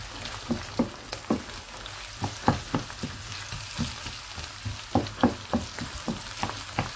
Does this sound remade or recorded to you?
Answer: recorded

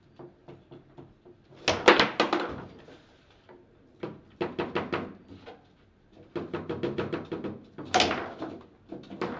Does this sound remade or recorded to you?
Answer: recorded